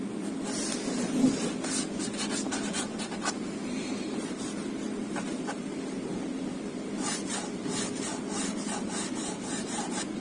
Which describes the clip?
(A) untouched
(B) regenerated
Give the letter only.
A